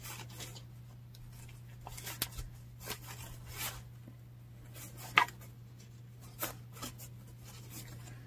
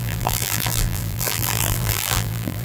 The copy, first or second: second